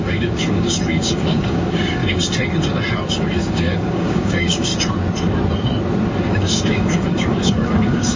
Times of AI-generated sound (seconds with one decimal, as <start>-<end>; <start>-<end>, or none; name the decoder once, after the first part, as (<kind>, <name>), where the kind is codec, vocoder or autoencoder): 0.0-2.0 (codec, DAC); 3.1-4.7; 6.3-8.2